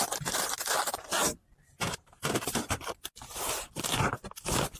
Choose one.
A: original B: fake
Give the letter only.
A